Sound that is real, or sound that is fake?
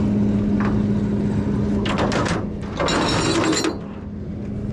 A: real